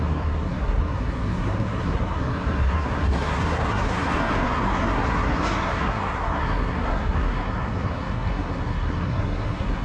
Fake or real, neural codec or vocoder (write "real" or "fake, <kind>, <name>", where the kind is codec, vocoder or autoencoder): fake, codec, SNAC